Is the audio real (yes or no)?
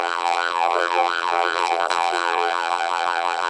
no